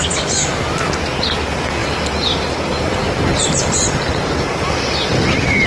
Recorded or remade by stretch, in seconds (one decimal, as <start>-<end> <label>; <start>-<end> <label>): 0.0-1.8 recorded; 1.8-3.8 remade; 3.8-5.7 recorded